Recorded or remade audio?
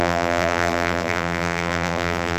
remade